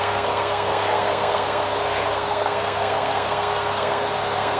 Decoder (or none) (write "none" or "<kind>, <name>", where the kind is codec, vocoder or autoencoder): codec, SNAC